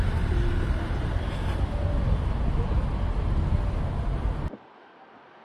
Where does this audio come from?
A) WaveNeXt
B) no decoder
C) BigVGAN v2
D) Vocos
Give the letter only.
B